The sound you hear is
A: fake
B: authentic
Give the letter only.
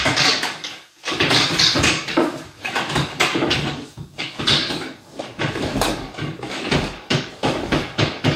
A